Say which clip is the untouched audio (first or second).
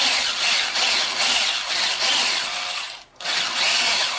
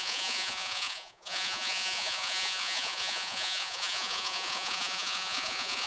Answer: first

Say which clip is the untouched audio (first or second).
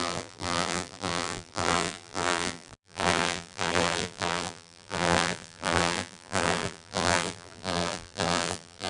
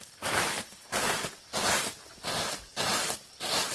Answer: second